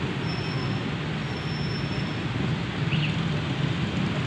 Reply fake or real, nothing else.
real